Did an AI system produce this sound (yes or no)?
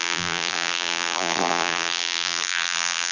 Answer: yes